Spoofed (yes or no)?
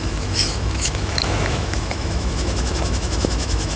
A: yes